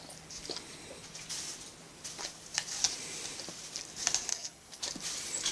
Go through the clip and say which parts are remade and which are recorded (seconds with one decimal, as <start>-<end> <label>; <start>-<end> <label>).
0.0-4.3 recorded; 4.3-4.8 remade; 4.8-5.5 recorded